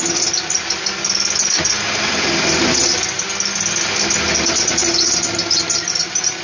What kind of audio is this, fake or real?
real